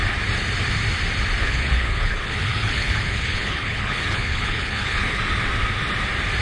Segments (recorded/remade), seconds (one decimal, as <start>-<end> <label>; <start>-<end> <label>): 0.0-1.4 recorded; 1.4-5.2 remade; 5.2-6.4 recorded